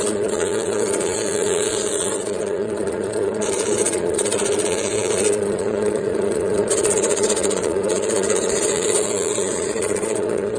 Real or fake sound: fake